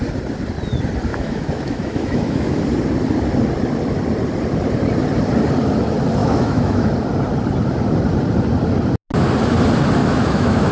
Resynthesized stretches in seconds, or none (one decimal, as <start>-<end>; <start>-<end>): 1.1-2.6; 6.2-6.9; 10.0-10.7

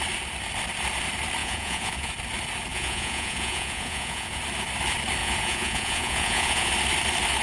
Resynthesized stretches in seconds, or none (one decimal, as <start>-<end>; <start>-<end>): 1.4-2.1; 2.7-4.4; 5.2-6.7